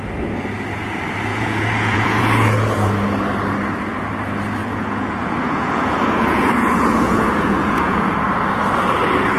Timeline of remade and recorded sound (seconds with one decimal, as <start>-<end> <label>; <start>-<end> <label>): 0.0-1.3 recorded; 1.3-2.9 remade; 2.9-4.6 recorded; 4.6-8.1 remade; 8.1-9.4 recorded